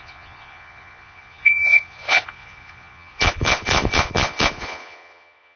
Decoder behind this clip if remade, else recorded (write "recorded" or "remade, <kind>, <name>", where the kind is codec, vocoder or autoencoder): remade, vocoder, Vocos